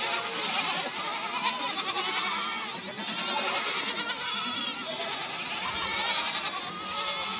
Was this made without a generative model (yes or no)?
yes